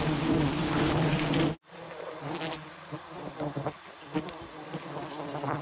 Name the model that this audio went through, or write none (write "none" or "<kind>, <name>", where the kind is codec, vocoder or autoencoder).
none